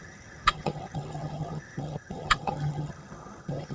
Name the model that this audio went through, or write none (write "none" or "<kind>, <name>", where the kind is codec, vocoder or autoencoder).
vocoder, HiFi-GAN